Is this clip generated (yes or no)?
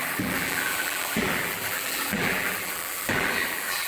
yes